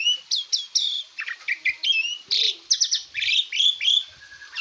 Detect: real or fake real